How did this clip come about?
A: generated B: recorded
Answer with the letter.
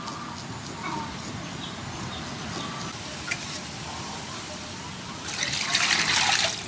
B